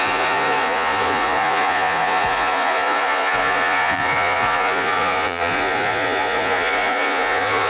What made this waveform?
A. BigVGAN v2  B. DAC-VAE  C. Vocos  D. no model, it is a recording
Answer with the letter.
C